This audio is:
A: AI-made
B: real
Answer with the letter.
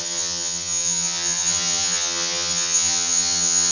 A